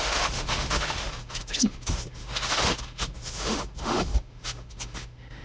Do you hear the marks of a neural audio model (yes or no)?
yes